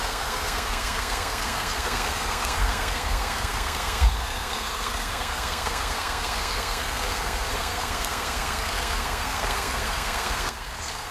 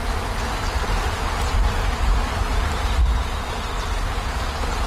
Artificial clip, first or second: first